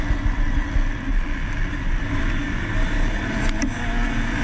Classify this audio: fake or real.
real